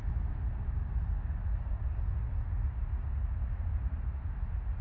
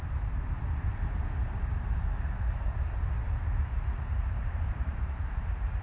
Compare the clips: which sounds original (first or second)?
first